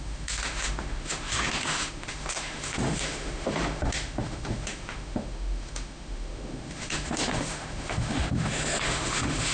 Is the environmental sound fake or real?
fake